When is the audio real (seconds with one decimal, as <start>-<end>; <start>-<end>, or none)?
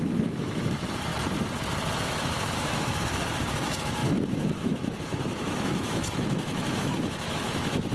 1.1-2.0